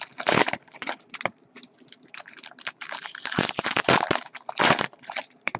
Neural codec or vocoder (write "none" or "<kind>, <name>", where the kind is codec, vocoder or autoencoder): vocoder, BigVGAN v2